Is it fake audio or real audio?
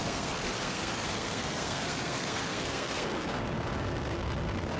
fake